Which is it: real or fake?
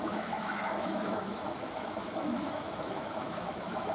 fake